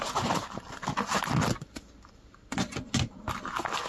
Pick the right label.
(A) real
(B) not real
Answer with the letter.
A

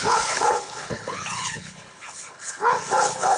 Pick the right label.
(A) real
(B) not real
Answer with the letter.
B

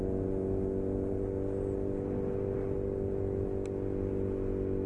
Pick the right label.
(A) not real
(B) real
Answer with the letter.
B